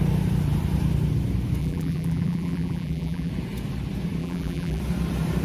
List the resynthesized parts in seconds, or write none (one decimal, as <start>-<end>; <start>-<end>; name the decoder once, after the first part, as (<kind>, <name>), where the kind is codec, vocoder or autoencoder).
1.6-3.3 (vocoder, BigVGAN v2); 4.2-4.8